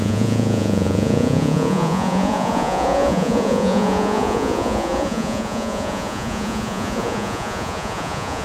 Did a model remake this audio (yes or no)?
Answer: yes